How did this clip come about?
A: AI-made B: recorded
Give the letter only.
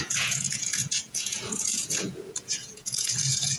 A